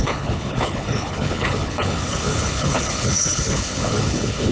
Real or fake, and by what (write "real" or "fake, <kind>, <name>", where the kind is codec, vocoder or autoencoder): fake, codec, HILCodec